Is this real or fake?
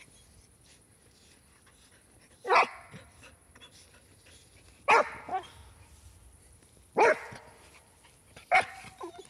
real